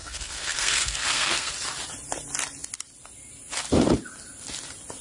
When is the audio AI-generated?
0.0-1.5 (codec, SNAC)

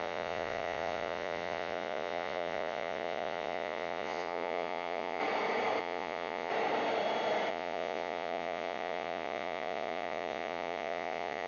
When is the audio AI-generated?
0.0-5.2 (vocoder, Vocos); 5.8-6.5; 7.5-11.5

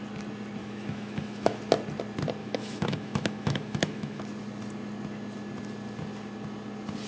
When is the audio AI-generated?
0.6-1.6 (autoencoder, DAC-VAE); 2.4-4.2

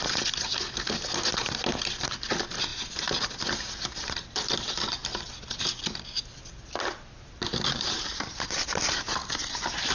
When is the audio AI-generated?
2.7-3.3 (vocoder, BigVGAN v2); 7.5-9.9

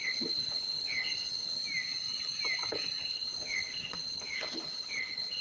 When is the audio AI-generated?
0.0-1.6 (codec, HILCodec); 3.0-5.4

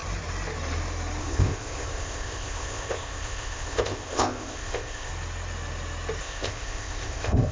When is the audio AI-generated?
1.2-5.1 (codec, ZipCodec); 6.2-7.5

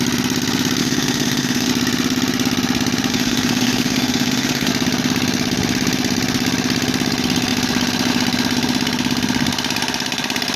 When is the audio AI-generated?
0.8-1.7 (autoencoder, DAC-VAE); 3.1-4.7